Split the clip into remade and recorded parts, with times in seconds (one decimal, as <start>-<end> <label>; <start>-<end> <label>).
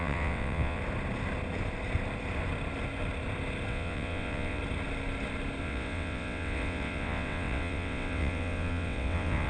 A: 0.0-0.8 remade; 0.8-3.7 recorded; 3.7-4.6 remade; 4.6-5.6 recorded; 5.6-9.5 remade